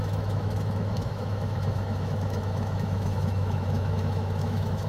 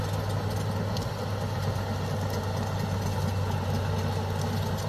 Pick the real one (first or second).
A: second